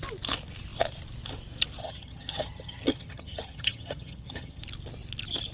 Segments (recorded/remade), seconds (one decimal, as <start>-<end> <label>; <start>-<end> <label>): 0.0-1.8 recorded; 1.8-4.6 remade; 4.6-5.5 recorded